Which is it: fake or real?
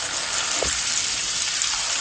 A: real